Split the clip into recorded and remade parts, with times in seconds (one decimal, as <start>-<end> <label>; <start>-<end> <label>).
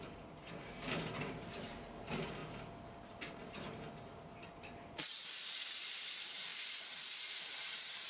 0.0-2.4 remade; 2.4-3.3 recorded; 3.3-8.1 remade